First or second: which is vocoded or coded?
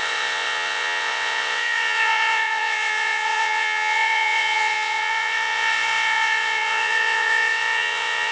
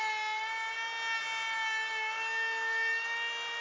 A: first